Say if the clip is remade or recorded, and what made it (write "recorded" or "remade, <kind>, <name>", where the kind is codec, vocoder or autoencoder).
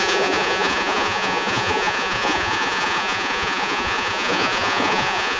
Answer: remade, vocoder, Vocos